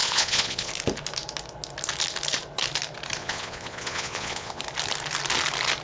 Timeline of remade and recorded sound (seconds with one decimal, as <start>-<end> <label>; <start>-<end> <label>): 0.0-0.7 remade; 0.7-3.2 recorded; 3.2-4.6 remade; 4.6-5.8 recorded